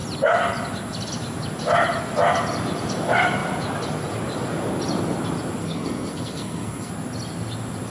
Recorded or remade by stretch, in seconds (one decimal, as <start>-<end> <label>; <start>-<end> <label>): 0.0-5.6 recorded; 5.6-6.9 remade; 6.9-7.9 recorded

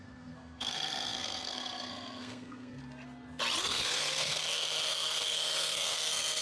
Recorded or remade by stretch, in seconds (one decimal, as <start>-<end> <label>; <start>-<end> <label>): 0.0-2.8 remade; 2.8-3.6 recorded; 3.6-6.4 remade

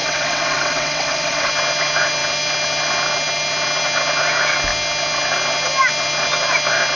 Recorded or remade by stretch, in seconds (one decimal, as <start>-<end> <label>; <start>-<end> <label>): 0.0-1.5 remade; 1.5-7.0 recorded

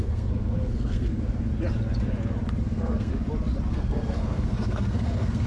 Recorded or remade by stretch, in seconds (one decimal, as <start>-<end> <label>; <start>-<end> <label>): 0.0-1.5 remade; 1.5-2.6 recorded; 2.6-3.1 remade; 3.1-3.7 recorded; 3.7-5.5 remade

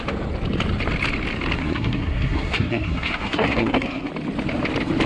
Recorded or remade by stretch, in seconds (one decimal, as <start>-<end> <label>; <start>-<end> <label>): 0.0-1.6 recorded; 1.6-4.1 remade; 4.1-5.1 recorded

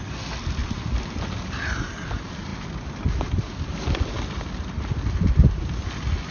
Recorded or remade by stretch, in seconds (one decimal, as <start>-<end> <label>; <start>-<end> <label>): 0.0-6.3 recorded

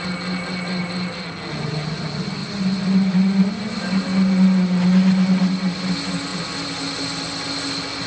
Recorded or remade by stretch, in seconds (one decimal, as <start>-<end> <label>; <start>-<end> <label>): 0.0-8.1 recorded